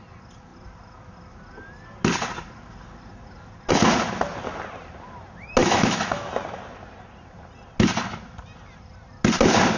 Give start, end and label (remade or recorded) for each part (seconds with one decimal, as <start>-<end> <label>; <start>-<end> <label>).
0.0-5.6 recorded; 5.6-6.3 remade; 6.3-9.8 recorded